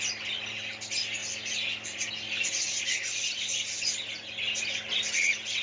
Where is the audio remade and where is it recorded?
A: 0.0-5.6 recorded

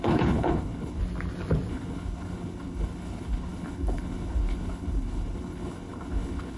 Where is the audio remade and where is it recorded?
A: 0.0-1.0 remade; 1.0-1.7 recorded; 1.7-6.6 remade

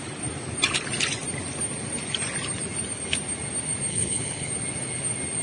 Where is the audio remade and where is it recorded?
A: 0.0-3.9 recorded; 3.9-4.5 remade; 4.5-5.4 recorded